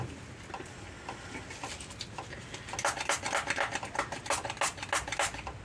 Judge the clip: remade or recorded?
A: recorded